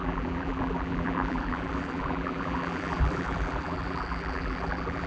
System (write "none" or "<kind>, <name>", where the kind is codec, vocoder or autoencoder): vocoder, BigVGAN v2